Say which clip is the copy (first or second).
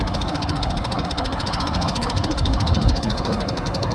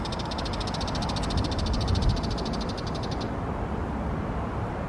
first